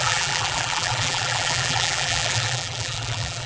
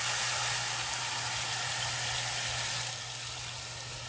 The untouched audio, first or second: second